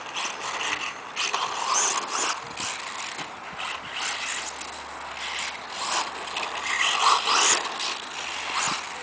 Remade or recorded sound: recorded